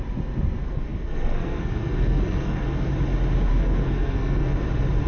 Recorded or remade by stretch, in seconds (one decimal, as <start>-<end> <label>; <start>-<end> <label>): 0.0-0.6 recorded; 0.6-2.9 remade; 2.9-3.5 recorded; 3.5-4.6 remade; 4.6-5.1 recorded